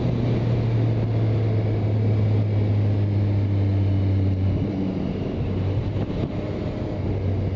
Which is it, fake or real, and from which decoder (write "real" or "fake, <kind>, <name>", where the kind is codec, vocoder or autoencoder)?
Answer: real